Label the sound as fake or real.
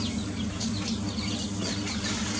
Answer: real